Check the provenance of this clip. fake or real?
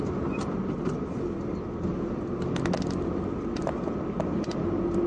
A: real